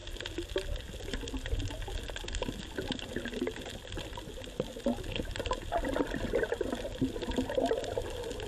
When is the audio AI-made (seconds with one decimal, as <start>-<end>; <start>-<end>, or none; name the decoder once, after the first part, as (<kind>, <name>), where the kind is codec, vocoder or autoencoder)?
none